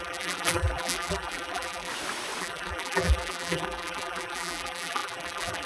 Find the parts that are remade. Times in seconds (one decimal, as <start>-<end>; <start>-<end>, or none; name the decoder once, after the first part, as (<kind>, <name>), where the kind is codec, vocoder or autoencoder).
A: 0.0-1.9 (vocoder, BigVGAN v2); 2.4-5.7